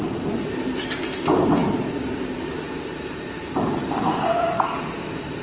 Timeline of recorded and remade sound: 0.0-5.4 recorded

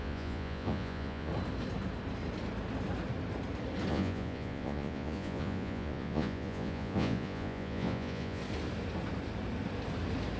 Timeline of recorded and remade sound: 0.0-1.3 remade; 1.3-3.9 recorded; 3.9-8.4 remade; 8.4-10.4 recorded

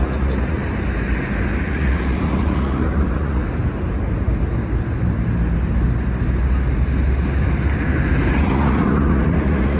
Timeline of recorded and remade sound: 0.0-0.6 remade; 0.6-1.6 recorded; 1.6-3.4 remade; 3.4-8.3 recorded; 8.3-9.8 remade

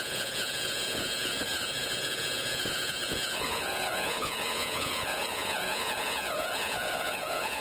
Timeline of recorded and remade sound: 0.0-7.6 remade

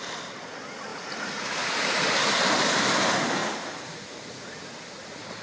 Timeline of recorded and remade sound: 0.0-0.9 recorded; 0.9-2.0 remade; 2.0-3.4 recorded; 3.4-5.4 remade

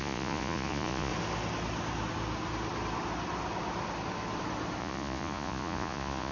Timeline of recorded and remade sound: 0.0-1.1 remade; 1.1-4.8 recorded; 4.8-6.3 remade